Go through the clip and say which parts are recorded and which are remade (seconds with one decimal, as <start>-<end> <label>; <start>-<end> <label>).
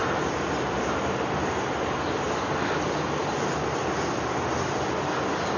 0.0-5.6 recorded